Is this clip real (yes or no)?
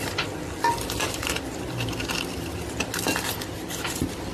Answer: yes